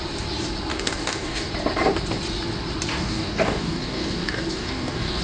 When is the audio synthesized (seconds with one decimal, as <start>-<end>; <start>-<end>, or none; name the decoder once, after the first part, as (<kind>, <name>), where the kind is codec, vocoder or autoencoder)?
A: 0.7-1.5 (codec, DAC); 2.9-5.2